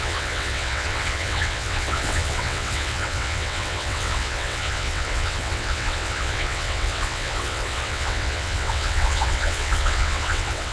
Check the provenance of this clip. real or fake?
fake